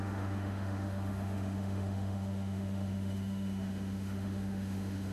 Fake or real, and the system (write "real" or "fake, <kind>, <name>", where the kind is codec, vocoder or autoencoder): fake, autoencoder, DAC-VAE